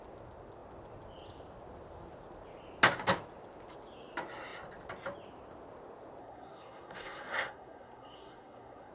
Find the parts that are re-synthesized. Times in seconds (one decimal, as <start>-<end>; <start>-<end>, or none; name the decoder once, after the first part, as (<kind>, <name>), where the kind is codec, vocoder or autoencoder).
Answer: 6.2-8.9 (codec, SNAC)